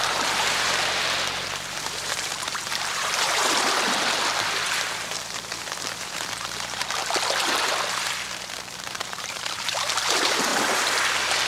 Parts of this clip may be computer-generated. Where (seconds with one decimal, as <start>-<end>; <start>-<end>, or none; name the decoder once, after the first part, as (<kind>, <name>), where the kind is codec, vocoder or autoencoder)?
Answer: 0.0-3.4 (vocoder, BigVGAN v2); 6.0-7.0; 8.5-10.5